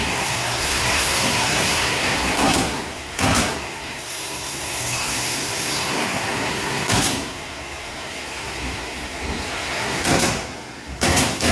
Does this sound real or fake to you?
fake